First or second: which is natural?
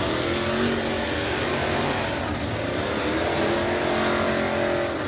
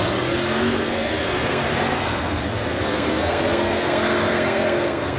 first